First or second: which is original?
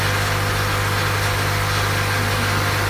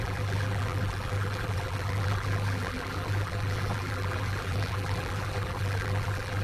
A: first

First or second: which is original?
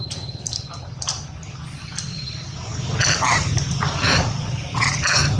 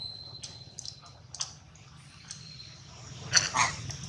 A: second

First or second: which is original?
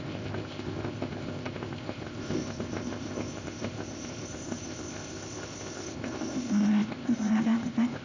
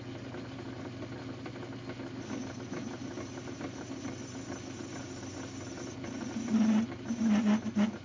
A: second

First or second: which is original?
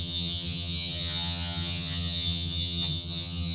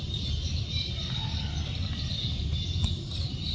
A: second